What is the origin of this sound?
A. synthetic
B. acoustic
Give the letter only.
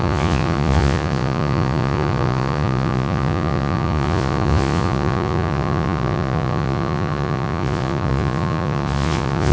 A